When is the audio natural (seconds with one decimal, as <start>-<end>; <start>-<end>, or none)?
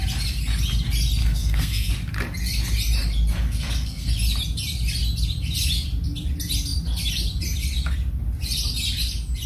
0.0-1.2; 1.9-3.3; 4.1-9.5